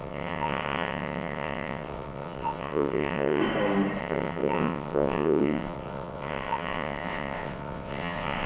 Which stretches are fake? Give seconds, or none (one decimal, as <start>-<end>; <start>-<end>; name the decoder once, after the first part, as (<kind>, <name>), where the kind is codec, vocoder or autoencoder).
0.0-3.4 (vocoder, WaveNeXt); 4.0-8.5